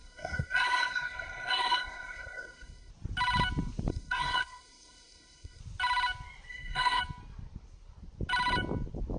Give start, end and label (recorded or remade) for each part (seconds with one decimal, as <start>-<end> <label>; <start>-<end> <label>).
0.0-2.9 remade; 2.9-3.9 recorded; 3.9-5.6 remade; 5.6-6.5 recorded; 6.5-7.0 remade; 7.0-9.2 recorded